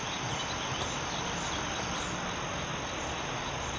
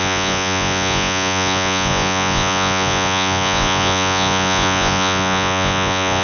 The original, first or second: first